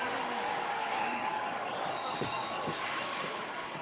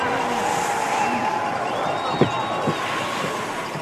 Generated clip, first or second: first